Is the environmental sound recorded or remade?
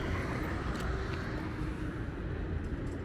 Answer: recorded